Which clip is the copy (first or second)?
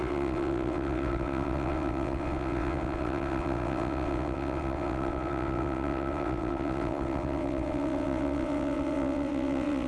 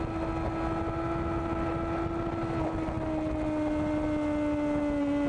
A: first